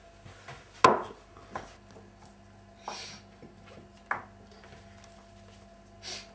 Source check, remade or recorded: recorded